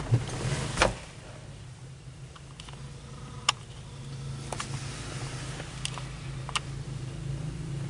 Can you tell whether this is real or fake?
real